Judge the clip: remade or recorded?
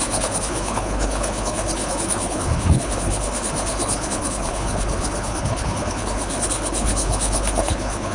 remade